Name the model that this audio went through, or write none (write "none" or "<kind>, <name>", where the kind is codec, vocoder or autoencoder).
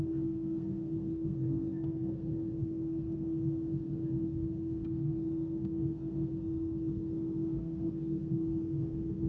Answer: codec, SNAC